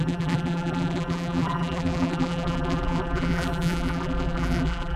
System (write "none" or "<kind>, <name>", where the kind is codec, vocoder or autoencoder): vocoder, BigVGAN v2